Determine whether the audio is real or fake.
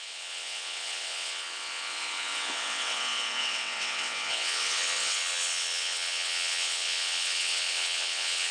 fake